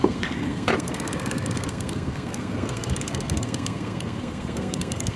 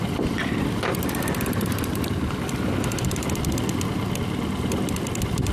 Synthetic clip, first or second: first